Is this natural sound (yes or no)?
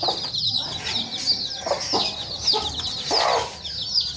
yes